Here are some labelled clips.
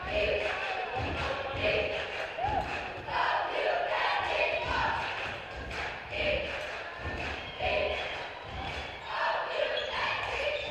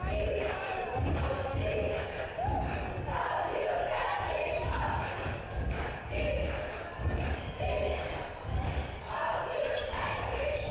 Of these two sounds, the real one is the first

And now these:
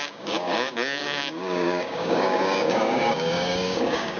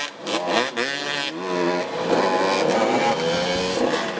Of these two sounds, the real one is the second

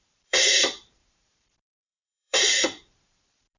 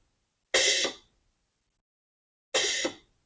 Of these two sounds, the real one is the second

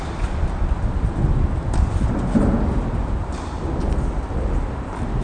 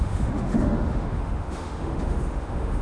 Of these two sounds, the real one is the first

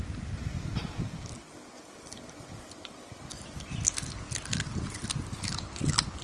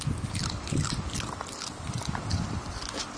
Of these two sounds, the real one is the first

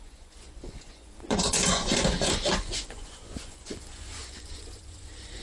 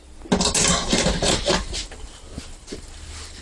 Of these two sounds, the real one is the second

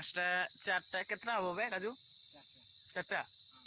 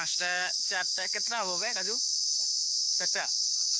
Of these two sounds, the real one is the first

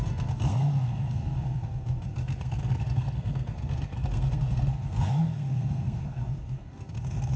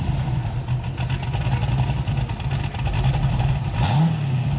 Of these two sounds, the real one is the second